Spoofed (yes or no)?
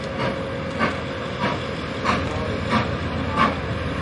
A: no